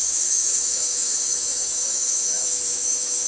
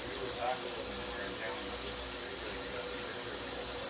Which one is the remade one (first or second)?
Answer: first